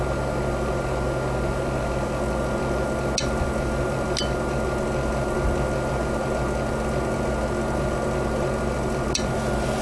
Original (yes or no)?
yes